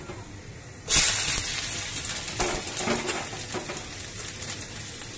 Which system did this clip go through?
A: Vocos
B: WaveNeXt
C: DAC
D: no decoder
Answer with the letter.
D